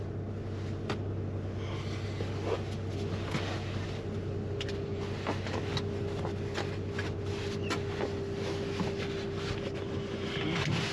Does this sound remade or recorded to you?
recorded